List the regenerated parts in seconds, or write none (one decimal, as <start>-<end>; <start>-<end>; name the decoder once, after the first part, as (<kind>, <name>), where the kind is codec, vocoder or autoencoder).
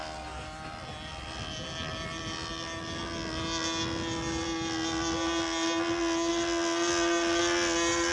none